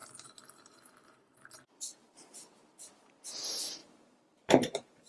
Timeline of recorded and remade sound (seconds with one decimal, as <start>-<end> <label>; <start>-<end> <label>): 0.0-2.7 remade; 2.7-3.8 recorded; 3.8-5.1 remade